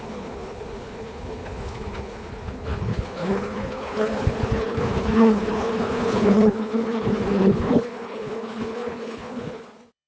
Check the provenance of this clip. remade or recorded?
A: remade